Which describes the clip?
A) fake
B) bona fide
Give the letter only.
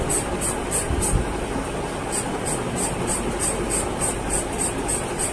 B